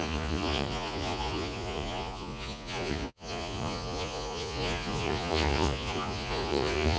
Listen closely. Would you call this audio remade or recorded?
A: remade